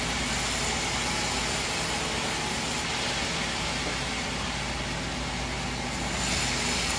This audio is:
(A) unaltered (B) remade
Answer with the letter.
A